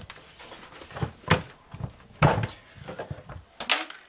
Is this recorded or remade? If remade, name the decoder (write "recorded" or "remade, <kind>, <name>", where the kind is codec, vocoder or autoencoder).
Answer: recorded